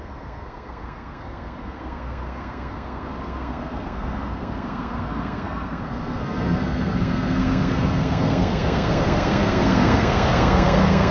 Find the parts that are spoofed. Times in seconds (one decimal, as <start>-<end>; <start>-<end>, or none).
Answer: 0.0-11.1